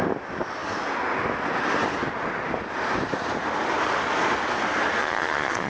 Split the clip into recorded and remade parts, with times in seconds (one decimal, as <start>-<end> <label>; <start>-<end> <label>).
0.0-5.0 recorded; 5.0-5.7 remade